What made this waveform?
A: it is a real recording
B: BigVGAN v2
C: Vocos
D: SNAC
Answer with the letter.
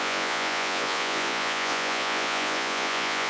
C